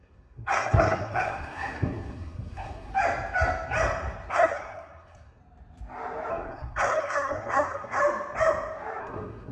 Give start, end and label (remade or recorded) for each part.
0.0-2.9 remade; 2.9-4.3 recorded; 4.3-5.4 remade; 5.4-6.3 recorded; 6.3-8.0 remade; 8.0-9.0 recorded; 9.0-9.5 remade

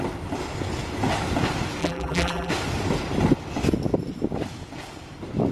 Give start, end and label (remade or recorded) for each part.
0.0-1.8 recorded; 1.8-2.5 remade; 2.5-5.5 recorded

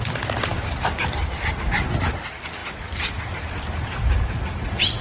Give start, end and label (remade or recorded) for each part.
0.0-5.0 recorded

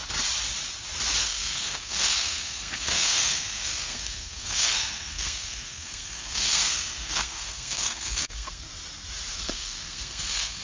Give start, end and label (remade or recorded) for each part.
0.0-1.2 recorded; 1.2-8.7 remade; 8.7-9.3 recorded; 9.3-10.6 remade